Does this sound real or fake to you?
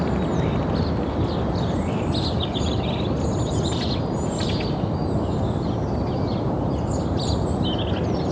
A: real